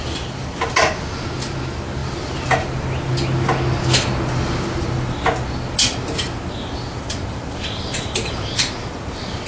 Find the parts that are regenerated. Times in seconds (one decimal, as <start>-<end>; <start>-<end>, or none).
none